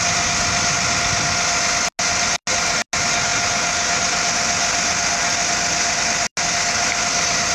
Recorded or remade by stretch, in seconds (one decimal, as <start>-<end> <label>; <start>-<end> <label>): 0.0-7.5 recorded